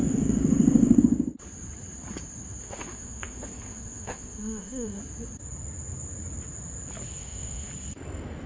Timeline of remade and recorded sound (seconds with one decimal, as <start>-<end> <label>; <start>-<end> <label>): 0.0-1.0 remade; 1.0-2.6 recorded; 2.6-5.0 remade; 5.0-7.2 recorded; 7.2-7.7 remade; 7.7-8.5 recorded